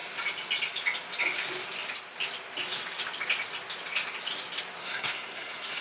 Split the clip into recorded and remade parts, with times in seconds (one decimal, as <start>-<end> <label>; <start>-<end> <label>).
0.0-4.8 recorded; 4.8-5.8 remade